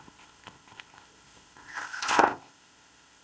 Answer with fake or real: fake